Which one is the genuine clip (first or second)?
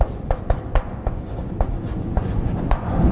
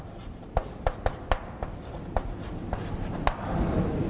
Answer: second